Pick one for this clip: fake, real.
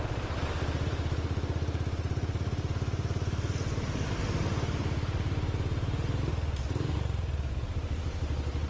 real